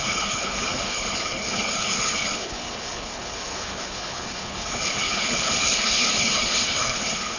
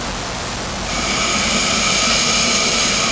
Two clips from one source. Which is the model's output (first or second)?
first